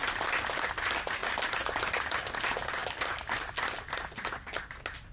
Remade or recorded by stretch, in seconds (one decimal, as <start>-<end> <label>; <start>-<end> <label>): 0.0-5.1 recorded